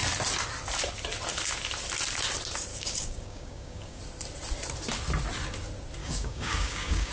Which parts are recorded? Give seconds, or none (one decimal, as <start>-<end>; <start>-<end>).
0.0-2.7; 4.0-6.0